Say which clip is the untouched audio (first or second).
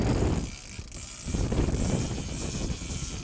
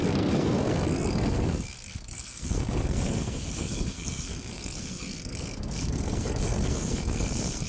first